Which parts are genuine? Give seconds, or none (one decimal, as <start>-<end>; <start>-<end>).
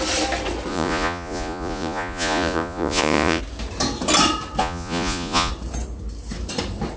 0.0-0.7; 3.4-4.6; 5.5-7.0